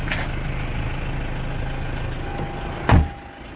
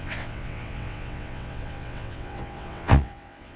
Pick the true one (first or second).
first